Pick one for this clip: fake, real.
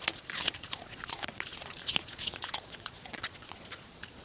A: fake